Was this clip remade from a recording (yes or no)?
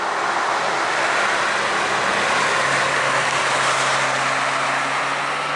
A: no